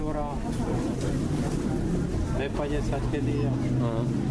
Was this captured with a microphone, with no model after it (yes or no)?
yes